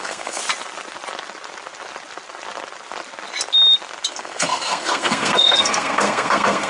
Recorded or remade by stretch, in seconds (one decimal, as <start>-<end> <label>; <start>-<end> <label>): 0.0-0.4 remade; 0.4-4.1 recorded; 4.1-6.7 remade